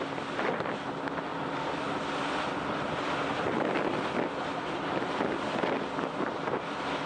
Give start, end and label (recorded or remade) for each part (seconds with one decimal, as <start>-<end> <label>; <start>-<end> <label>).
0.0-7.1 recorded